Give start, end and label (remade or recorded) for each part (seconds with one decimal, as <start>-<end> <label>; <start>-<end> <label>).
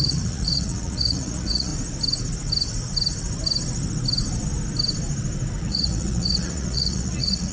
0.0-1.7 remade; 1.7-5.6 recorded; 5.6-7.5 remade